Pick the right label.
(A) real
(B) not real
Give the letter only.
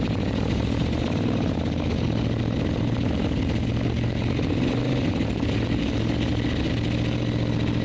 A